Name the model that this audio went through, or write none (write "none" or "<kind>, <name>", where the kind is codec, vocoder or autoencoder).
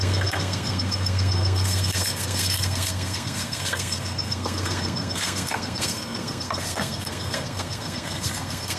codec, SNAC